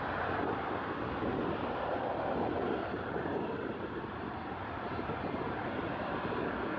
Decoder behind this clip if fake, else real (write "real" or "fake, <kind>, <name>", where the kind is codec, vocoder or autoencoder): real